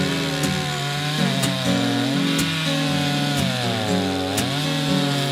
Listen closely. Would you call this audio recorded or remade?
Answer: recorded